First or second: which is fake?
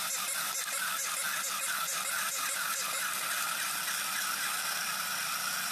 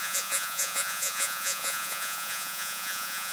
second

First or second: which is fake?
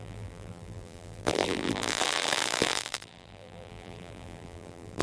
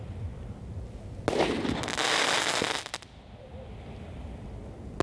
first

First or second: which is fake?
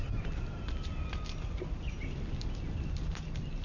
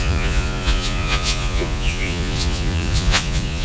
second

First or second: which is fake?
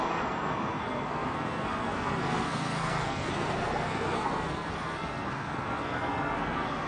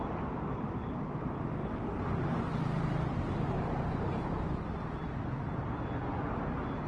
first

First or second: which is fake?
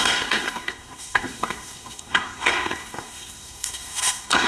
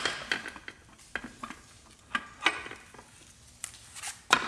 first